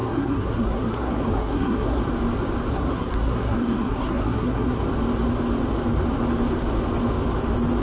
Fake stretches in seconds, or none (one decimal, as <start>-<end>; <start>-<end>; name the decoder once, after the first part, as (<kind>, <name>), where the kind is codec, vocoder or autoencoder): 0.0-2.0 (codec, SNAC); 2.7-4.8